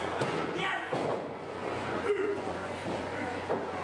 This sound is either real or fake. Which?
fake